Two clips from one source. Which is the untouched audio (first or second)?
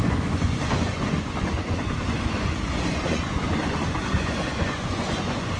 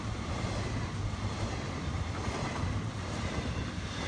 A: second